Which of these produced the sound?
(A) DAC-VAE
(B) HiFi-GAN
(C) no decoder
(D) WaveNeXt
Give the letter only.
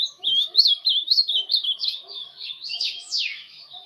A